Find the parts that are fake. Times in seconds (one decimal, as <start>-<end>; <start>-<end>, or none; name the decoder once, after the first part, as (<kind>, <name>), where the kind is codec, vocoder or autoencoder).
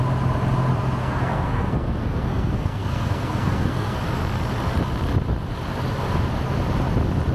1.0-4.0 (codec, SNAC)